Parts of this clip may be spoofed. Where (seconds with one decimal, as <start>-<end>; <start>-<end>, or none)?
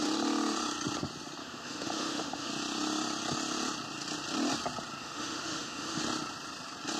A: 1.4-2.5; 5.0-6.0